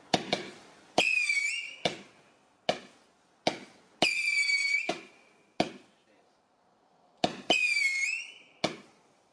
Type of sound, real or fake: real